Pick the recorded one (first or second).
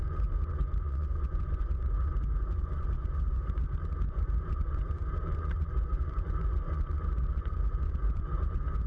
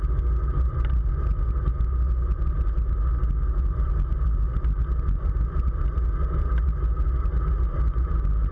second